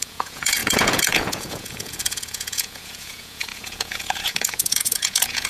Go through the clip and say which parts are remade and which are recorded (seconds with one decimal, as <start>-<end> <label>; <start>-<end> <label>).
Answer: 0.0-5.5 remade